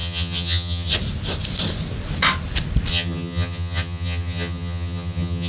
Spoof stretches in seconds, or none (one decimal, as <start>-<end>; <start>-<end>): 0.0-0.9; 2.9-5.5